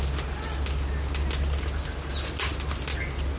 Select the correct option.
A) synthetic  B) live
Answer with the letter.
B